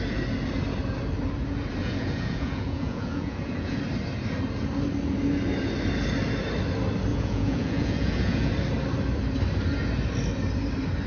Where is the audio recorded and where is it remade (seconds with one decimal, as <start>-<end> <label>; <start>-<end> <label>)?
0.0-1.8 recorded; 1.8-3.8 remade; 3.8-7.1 recorded; 7.1-8.5 remade; 8.5-11.1 recorded